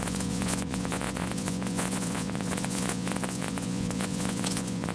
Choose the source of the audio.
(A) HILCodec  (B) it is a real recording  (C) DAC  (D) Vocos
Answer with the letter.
D